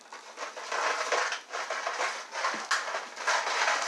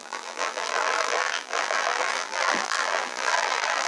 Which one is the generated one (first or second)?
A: second